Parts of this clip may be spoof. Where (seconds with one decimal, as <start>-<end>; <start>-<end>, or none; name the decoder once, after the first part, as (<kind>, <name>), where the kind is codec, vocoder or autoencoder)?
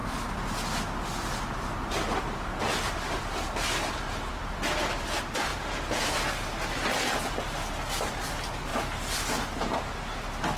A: 5.5-6.0 (vocoder, Vocos)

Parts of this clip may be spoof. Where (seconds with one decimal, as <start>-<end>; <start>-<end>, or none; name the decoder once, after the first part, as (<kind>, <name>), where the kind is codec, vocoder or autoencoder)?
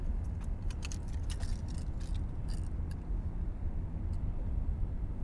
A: none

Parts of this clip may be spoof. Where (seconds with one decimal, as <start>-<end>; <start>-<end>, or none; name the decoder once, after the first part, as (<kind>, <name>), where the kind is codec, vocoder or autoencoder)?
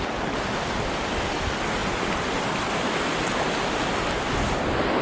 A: none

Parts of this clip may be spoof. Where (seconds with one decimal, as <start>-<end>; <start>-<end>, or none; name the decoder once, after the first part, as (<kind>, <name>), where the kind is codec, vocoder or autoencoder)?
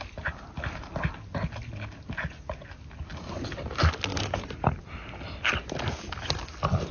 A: none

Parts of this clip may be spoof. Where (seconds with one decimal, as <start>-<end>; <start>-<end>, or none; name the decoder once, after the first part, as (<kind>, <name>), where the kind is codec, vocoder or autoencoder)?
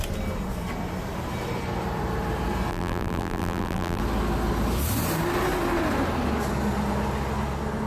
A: 2.7-4.0 (vocoder, BigVGAN v2)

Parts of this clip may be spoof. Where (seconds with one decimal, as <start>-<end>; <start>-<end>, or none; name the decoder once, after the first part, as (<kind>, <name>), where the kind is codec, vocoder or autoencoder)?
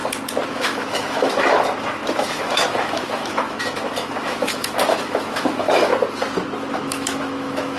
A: 0.5-5.9 (autoencoder, DAC-VAE); 6.7-7.8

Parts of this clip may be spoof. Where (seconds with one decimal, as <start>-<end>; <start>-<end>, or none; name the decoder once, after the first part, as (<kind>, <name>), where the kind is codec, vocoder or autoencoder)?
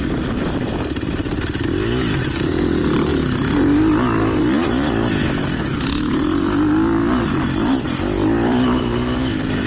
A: 0.0-3.1 (vocoder, BigVGAN v2); 7.9-9.7